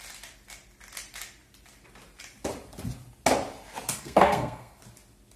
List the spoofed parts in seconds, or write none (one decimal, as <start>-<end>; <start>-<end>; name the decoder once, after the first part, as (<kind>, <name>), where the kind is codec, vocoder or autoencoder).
3.9-4.8 (codec, SNAC)